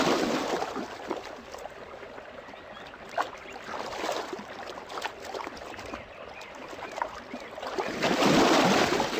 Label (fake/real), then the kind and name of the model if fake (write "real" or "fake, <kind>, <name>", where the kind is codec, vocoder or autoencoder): real